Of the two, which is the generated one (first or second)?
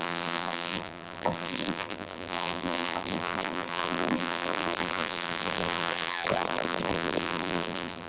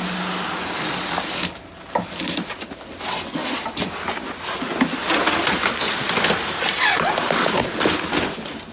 first